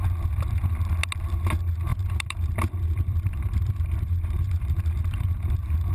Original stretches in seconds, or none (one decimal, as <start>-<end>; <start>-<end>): 0.0-1.9; 5.4-5.9